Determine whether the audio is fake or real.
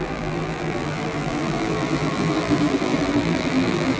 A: fake